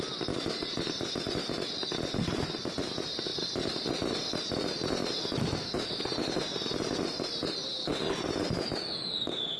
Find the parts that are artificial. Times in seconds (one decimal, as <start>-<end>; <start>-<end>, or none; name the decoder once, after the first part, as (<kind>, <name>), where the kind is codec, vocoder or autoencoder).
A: none